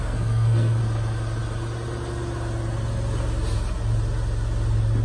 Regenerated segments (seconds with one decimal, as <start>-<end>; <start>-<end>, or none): 0.0-0.8